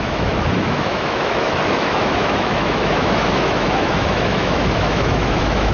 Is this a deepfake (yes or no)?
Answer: yes